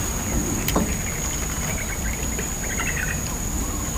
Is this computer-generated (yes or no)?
no